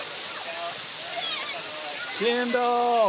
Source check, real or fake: real